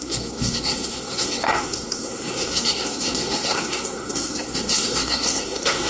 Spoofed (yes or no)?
yes